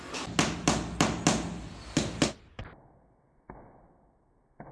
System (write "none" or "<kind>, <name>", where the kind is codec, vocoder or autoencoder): none